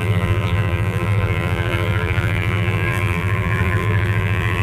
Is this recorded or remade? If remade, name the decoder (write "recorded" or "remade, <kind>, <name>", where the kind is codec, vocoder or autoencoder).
remade, vocoder, BigVGAN v2